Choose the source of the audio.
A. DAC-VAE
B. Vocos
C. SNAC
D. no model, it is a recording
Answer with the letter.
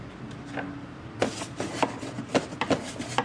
D